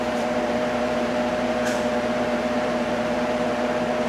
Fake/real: fake